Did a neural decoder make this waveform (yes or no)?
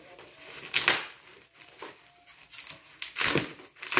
no